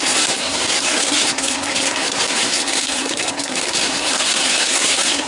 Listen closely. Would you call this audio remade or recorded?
remade